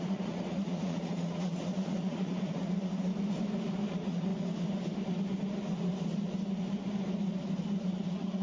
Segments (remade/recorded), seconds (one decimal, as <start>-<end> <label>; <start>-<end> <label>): 0.0-3.1 remade; 3.1-3.9 recorded; 3.9-4.3 remade; 4.3-7.9 recorded; 7.9-8.4 remade